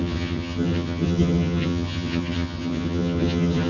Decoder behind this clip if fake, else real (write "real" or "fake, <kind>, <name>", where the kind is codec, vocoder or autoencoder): fake, vocoder, HiFi-GAN